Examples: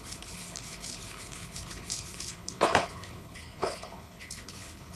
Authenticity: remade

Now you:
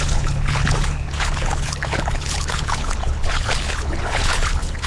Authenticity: remade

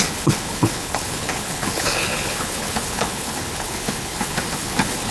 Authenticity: remade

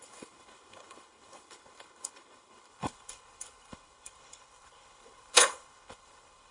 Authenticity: remade